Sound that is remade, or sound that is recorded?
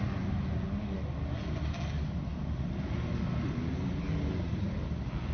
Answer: recorded